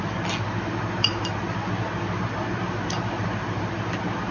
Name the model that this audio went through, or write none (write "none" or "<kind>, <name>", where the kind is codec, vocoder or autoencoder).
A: none